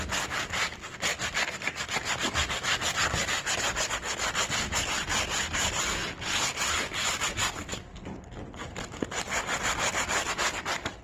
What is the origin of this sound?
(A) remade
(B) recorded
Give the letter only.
B